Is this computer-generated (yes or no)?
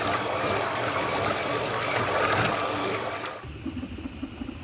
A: no